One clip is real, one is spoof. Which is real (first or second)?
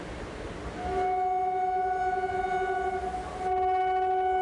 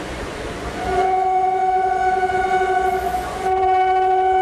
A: first